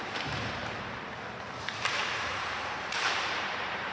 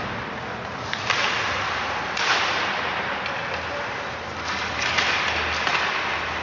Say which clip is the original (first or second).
second